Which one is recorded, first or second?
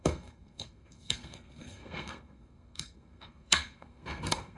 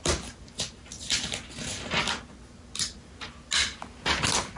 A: second